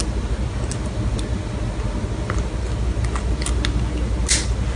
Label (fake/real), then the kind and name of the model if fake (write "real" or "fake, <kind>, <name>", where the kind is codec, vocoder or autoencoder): real